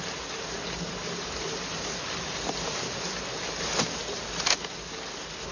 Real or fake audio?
real